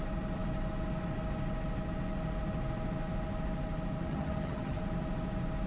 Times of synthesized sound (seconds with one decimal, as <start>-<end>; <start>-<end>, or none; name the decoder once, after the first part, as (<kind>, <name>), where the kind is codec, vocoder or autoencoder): 4.1-4.8 (vocoder, HiFi-GAN)